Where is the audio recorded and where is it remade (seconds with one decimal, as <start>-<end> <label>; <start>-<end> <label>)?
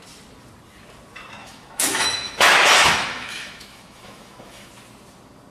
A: 0.0-1.4 recorded; 1.4-4.7 remade; 4.7-5.5 recorded